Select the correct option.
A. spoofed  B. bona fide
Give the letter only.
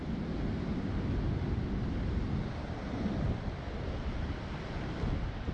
B